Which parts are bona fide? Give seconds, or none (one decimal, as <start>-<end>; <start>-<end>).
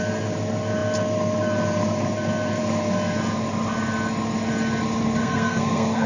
0.0-5.2